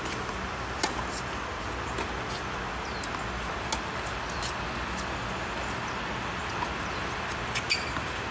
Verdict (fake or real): real